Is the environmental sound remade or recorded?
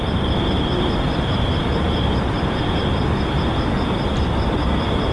recorded